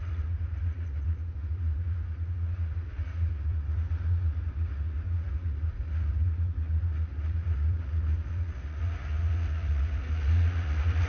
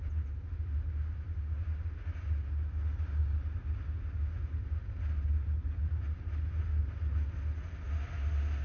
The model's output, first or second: first